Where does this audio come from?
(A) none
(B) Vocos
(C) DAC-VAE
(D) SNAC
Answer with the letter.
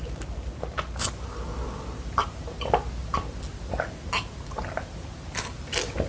A